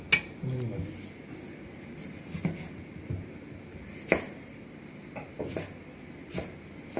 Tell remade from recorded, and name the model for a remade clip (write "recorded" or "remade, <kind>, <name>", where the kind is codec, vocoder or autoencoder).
recorded